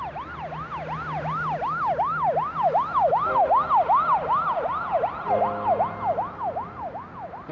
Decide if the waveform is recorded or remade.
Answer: recorded